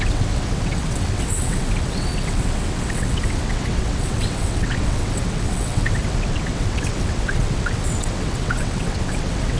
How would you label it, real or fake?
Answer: fake